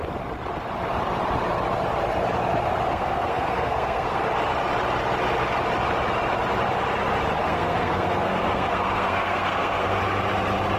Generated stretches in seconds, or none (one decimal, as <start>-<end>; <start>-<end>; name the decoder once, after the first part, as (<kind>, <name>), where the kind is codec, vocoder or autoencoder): 2.9-4.2 (codec, SNAC); 7.4-10.0